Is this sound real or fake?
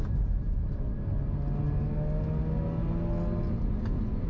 real